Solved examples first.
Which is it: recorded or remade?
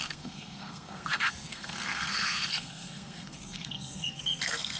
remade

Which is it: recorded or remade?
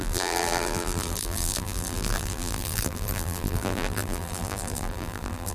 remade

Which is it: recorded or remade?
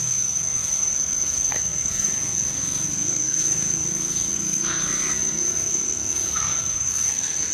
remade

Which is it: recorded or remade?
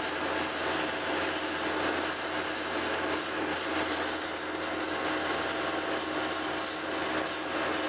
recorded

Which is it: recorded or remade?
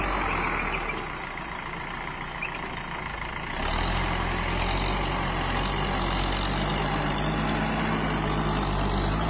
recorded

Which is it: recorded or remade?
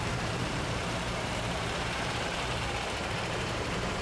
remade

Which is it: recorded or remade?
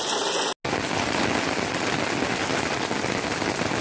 recorded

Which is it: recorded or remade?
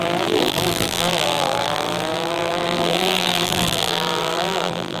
remade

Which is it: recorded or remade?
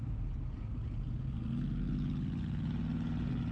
recorded